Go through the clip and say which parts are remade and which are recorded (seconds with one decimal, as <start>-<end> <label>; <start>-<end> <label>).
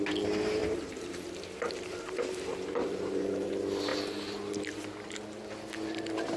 0.0-0.6 recorded; 0.6-3.5 remade; 3.5-6.4 recorded